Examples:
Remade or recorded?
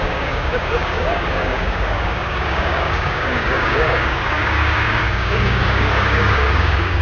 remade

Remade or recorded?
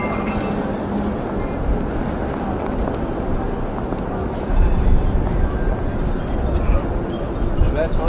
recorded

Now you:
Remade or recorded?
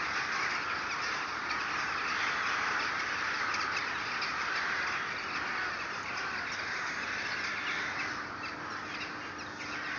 recorded